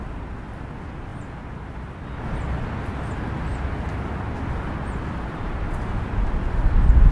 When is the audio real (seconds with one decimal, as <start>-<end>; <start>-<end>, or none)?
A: 0.0-7.1